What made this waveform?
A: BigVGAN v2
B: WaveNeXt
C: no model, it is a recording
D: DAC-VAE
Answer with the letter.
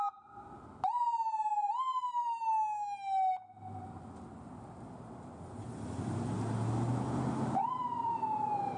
C